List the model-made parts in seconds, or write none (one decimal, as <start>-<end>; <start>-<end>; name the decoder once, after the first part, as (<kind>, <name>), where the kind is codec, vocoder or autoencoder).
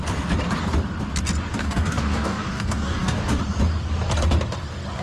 1.5-3.4 (codec, DAC)